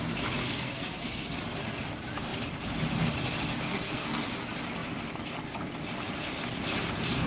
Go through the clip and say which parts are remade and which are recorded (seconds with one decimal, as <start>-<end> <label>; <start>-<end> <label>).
0.0-0.4 recorded; 0.4-1.4 remade; 1.4-3.5 recorded; 3.5-4.3 remade; 4.3-7.3 recorded